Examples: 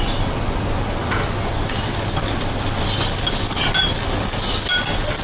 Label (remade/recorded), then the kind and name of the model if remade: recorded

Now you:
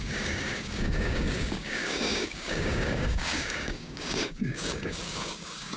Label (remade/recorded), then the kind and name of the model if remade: remade, codec, DAC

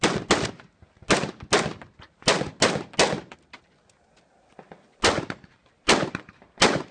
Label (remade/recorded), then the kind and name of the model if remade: recorded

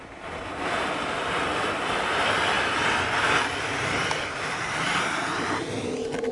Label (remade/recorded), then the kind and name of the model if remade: recorded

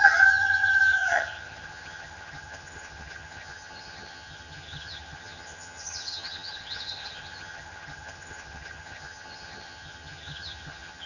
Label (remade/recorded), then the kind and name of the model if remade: remade, vocoder, HiFi-GAN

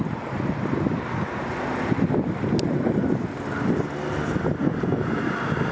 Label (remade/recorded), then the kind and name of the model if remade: recorded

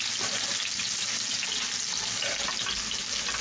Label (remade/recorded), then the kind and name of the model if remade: recorded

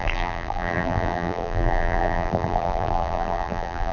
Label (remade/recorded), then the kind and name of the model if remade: remade, vocoder, BigVGAN v2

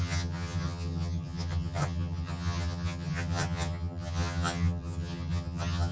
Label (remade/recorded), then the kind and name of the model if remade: remade, vocoder, HiFi-GAN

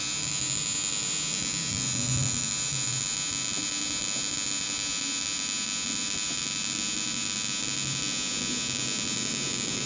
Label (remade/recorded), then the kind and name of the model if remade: recorded